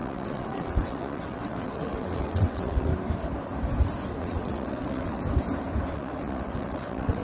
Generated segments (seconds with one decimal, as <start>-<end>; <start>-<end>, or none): 0.0-2.9; 4.2-5.2; 5.9-7.2